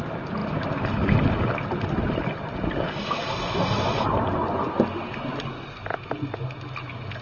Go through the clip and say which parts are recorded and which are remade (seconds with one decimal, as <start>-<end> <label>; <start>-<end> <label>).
0.0-7.2 recorded